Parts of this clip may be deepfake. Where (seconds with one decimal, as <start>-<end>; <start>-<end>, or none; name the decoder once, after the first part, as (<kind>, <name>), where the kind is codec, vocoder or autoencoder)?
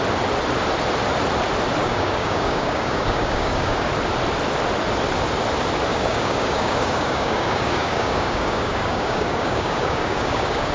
1.8-3.9 (codec, DAC); 5.9-10.7